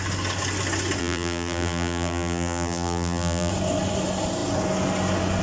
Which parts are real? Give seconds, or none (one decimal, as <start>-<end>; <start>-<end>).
0.0-1.0; 3.5-5.4